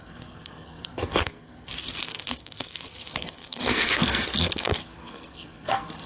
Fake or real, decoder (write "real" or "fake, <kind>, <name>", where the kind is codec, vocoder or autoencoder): fake, codec, SNAC